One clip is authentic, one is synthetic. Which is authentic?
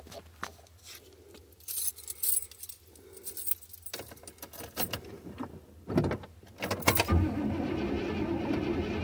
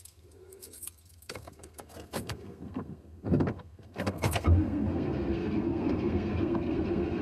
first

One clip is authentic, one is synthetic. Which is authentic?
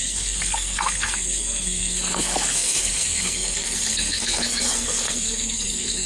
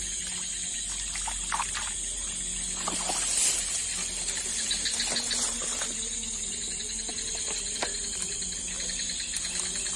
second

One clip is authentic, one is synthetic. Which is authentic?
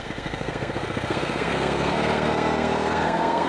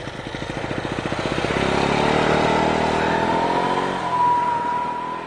second